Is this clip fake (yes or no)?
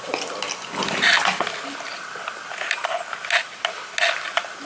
no